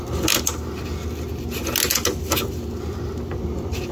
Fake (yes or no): no